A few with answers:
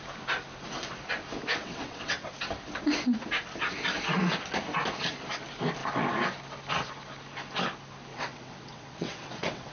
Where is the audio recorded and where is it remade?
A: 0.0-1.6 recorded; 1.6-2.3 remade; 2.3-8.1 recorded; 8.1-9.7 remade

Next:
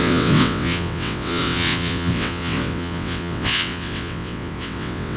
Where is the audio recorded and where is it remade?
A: 0.0-5.2 remade